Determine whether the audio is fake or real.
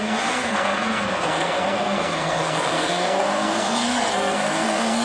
fake